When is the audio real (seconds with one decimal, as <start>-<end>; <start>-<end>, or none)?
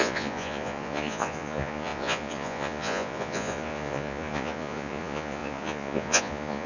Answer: none